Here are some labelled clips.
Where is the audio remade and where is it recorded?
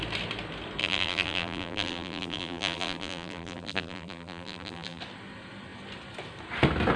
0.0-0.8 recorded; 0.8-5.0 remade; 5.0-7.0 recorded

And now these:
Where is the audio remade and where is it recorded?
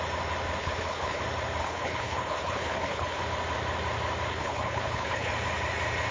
0.0-0.6 recorded; 0.6-1.2 remade; 1.2-1.6 recorded; 1.6-3.2 remade; 3.2-4.3 recorded; 4.3-5.3 remade; 5.3-6.1 recorded